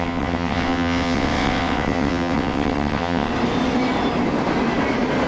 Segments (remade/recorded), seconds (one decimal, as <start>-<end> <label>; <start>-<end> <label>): 0.0-3.3 remade; 3.3-5.3 recorded